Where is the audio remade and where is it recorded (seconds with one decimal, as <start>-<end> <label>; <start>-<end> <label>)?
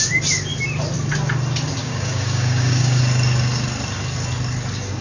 0.0-1.8 recorded; 1.8-3.0 remade; 3.0-5.0 recorded